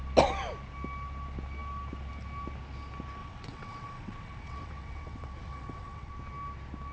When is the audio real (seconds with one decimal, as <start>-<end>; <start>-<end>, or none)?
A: 0.0-3.2; 6.1-6.9